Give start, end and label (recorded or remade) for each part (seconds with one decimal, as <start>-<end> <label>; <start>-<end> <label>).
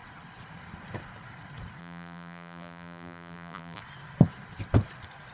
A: 0.0-1.8 recorded; 1.8-3.8 remade; 3.8-5.3 recorded